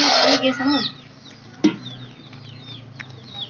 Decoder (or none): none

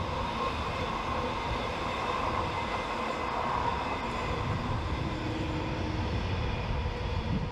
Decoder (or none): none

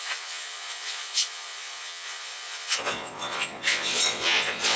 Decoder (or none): vocoder, Vocos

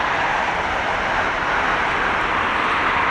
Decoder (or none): none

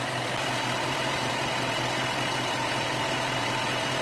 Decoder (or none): none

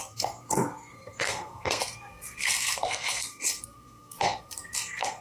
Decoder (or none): codec, SNAC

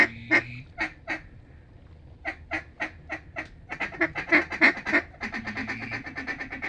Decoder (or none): none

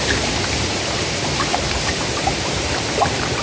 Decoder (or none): none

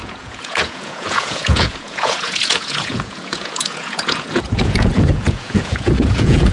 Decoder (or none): vocoder, Vocos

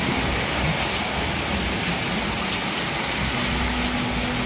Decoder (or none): none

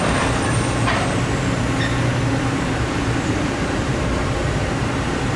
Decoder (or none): vocoder, BigVGAN v2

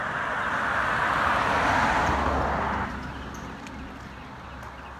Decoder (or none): none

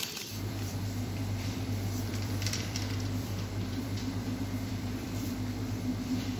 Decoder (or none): vocoder, BigVGAN v2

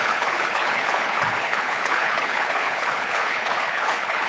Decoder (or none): codec, HILCodec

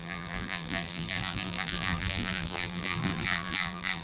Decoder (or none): vocoder, BigVGAN v2